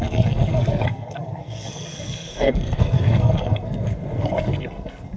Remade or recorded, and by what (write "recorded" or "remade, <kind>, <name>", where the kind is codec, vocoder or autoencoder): remade, codec, SNAC